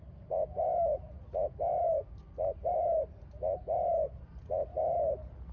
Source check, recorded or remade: recorded